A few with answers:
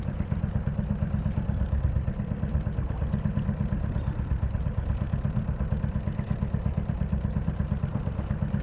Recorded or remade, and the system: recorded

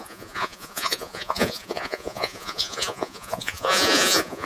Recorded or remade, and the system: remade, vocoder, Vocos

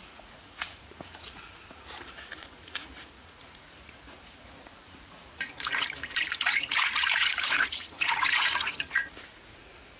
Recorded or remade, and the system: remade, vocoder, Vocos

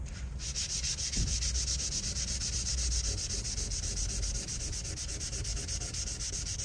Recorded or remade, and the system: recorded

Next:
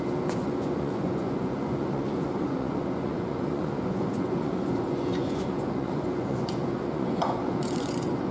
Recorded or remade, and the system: remade, vocoder, Vocos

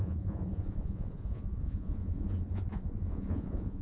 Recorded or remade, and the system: remade, vocoder, Vocos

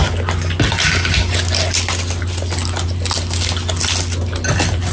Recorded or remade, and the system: recorded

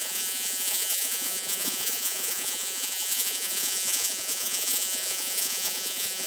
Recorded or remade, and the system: remade, vocoder, Vocos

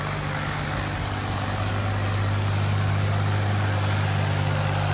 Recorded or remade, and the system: recorded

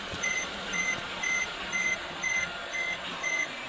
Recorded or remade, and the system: remade, vocoder, Vocos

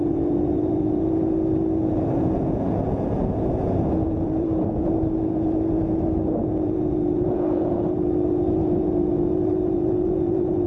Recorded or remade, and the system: remade, vocoder, Vocos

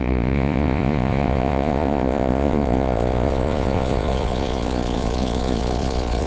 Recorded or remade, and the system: remade, vocoder, Vocos